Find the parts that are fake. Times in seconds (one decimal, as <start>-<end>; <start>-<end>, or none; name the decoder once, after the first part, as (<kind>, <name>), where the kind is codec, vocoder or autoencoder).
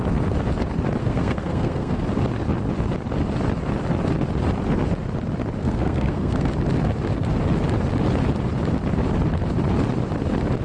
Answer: 1.0-2.0 (codec, SNAC); 5.6-6.5